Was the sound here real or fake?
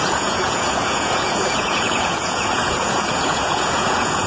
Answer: fake